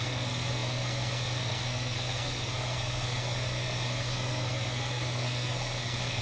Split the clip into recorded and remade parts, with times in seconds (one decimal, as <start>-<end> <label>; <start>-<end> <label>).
0.0-6.2 remade